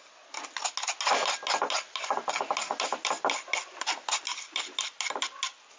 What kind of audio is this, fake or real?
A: real